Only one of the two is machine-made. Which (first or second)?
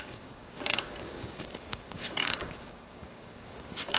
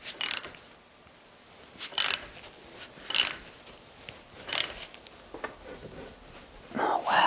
first